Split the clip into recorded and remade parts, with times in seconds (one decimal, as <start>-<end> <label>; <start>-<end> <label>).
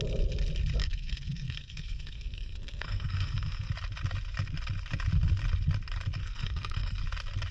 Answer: 0.0-0.8 recorded; 0.8-3.7 remade; 3.7-6.2 recorded; 6.2-7.0 remade; 7.0-7.5 recorded